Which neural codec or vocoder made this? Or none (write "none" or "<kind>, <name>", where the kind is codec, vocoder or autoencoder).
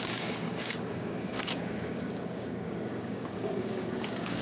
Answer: codec, DAC